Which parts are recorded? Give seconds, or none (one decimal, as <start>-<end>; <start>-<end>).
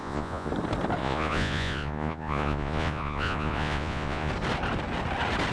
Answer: 0.5-1.0; 4.3-5.5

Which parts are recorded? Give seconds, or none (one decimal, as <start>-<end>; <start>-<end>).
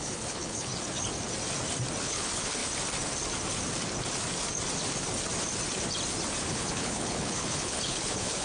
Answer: 0.7-2.0; 2.6-6.5